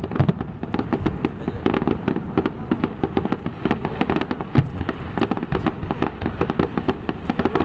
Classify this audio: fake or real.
real